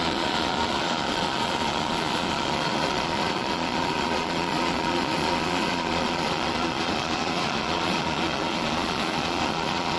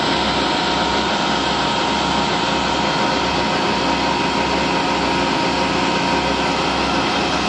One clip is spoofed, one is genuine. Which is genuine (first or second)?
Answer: second